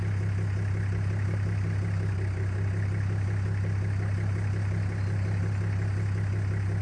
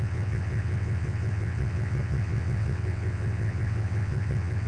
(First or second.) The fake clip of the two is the second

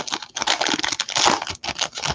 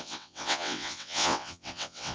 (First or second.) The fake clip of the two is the second